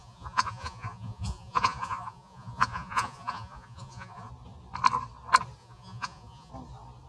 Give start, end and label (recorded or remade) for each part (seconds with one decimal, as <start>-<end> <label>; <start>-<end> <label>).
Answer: 0.0-4.3 remade; 4.3-5.6 recorded; 5.6-6.5 remade; 6.5-7.1 recorded

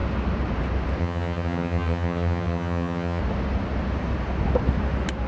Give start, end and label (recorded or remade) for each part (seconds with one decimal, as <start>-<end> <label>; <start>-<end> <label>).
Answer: 0.0-1.0 recorded; 1.0-3.2 remade; 3.2-5.3 recorded